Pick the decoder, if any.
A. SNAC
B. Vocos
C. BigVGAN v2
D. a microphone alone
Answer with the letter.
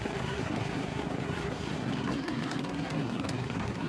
A